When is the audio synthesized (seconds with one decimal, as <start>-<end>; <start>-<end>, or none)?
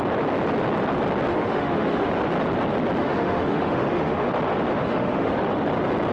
1.3-2.1; 3.0-4.3; 4.8-5.4